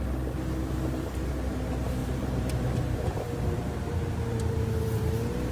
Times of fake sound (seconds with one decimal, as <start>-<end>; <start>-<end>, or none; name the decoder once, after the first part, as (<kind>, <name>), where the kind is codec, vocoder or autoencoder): 2.0-4.7 (vocoder, BigVGAN v2)